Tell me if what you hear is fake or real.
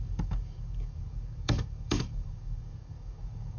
fake